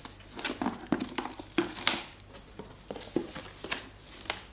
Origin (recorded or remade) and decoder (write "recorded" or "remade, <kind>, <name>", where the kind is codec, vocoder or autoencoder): recorded